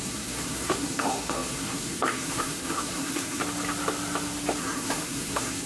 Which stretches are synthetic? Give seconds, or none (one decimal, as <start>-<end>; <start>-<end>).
0.0-3.4; 4.6-5.7